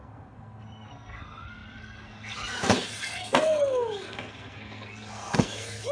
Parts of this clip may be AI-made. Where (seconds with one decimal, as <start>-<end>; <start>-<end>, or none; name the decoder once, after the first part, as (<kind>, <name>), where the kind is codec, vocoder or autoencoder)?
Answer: 0.0-5.9 (codec, SNAC)